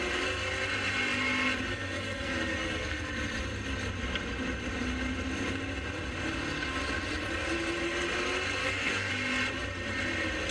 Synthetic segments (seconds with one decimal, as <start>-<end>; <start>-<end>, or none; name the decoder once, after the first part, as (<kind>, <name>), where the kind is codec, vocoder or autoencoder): 1.7-3.1 (codec, SNAC); 8.6-9.1